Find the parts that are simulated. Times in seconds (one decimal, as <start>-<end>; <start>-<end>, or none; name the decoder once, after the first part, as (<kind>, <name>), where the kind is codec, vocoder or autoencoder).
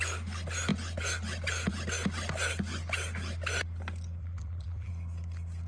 4.2-4.9 (vocoder, BigVGAN v2)